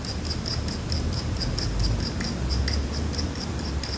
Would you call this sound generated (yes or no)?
no